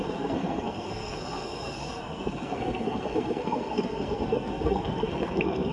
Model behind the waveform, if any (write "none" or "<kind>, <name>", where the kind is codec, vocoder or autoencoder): codec, SNAC